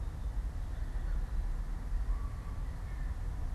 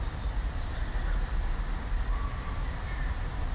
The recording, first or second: first